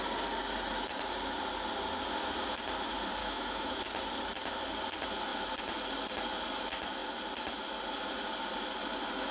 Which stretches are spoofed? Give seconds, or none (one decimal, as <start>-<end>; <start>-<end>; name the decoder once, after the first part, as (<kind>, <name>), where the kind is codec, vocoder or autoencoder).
3.2-3.8 (autoencoder, DAC-VAE)